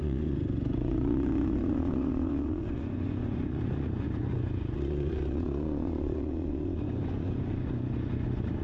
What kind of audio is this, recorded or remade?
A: remade